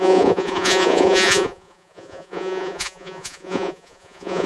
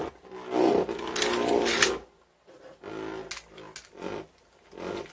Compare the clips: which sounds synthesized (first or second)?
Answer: first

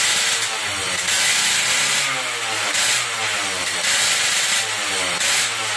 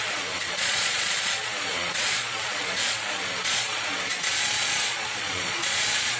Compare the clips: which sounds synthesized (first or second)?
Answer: second